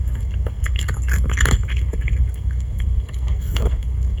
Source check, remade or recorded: remade